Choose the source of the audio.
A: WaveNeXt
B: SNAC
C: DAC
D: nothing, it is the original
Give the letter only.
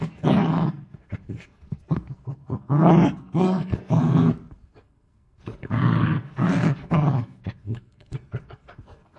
B